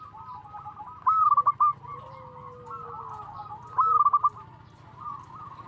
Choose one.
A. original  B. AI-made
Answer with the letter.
A